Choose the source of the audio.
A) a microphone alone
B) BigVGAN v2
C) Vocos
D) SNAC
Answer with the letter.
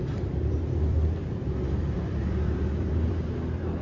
B